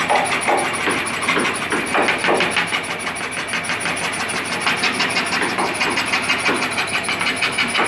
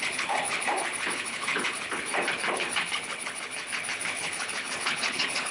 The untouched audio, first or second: first